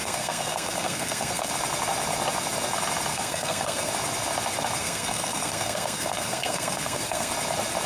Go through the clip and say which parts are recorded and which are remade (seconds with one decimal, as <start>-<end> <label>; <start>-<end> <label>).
0.0-1.5 remade; 1.5-3.1 recorded; 3.1-3.9 remade; 3.9-4.8 recorded; 4.8-7.3 remade; 7.3-7.9 recorded